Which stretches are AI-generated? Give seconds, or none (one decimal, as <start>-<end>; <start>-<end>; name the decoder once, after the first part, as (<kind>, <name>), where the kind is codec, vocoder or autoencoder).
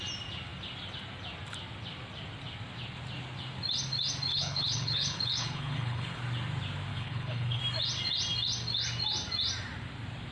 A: 4.3-6.2 (codec, HILCodec); 6.9-7.6